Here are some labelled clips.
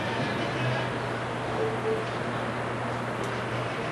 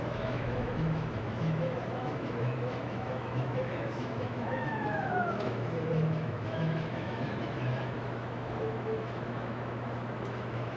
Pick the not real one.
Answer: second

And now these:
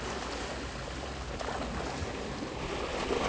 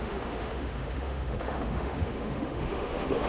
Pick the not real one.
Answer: second